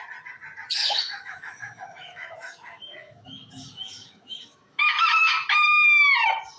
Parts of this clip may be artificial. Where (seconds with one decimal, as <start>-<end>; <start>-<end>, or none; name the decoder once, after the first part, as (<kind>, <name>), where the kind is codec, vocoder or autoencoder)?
0.8-4.8 (autoencoder, DAC-VAE)